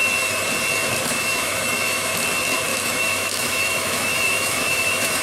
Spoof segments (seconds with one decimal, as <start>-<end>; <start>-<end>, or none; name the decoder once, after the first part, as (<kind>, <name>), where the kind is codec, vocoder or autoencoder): 1.1-2.1 (autoencoder, DAC-VAE); 2.7-5.2